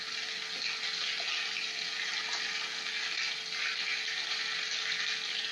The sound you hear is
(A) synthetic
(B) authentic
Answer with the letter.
B